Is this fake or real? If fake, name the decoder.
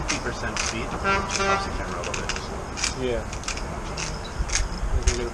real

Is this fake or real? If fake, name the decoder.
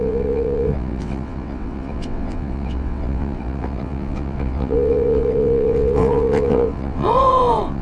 fake, vocoder, WaveNeXt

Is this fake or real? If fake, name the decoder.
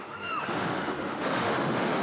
fake, autoencoder, DAC-VAE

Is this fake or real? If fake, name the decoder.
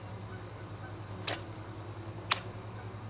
real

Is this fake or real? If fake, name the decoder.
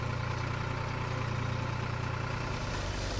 real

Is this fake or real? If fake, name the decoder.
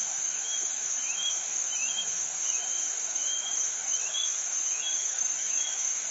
fake, autoencoder, DAC-VAE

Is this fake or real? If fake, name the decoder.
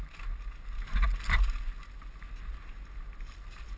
real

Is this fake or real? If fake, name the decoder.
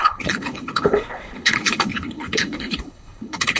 fake, codec, HILCodec